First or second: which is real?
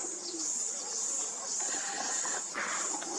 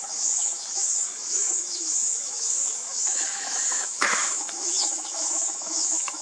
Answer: first